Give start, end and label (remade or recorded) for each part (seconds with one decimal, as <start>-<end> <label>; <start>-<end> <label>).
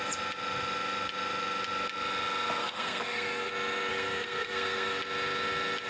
0.0-2.6 recorded; 2.6-3.5 remade; 3.5-3.9 recorded; 3.9-5.0 remade; 5.0-5.9 recorded